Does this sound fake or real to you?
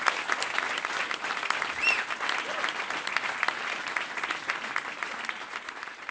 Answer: real